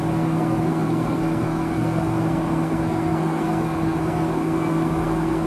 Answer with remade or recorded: remade